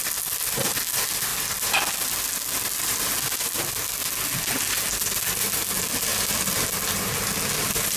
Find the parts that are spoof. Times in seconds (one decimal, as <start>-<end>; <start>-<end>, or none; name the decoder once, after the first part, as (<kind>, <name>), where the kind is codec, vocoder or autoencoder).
none